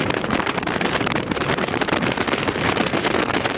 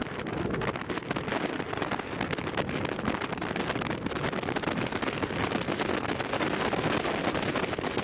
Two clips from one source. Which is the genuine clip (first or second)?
second